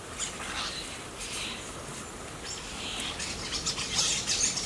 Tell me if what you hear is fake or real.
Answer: real